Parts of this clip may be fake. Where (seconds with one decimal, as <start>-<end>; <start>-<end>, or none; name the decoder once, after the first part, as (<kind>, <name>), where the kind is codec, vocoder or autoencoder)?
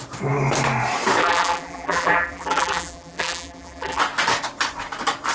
1.2-4.0 (vocoder, BigVGAN v2)